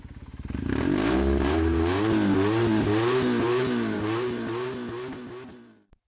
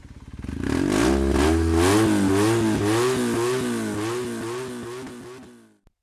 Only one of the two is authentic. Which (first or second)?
second